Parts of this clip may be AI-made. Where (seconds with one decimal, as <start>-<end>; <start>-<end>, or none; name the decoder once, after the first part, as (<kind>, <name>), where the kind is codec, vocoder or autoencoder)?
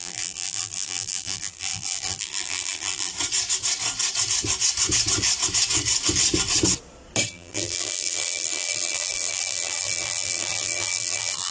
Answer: 0.0-3.1 (vocoder, BigVGAN v2); 7.3-11.5